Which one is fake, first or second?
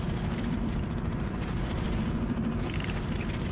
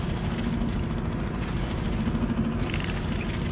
first